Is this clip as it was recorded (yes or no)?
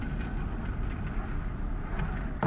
yes